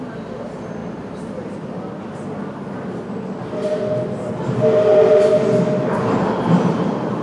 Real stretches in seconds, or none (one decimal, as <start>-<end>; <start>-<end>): 0.0-7.2